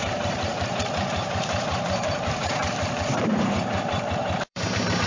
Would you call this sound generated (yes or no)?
yes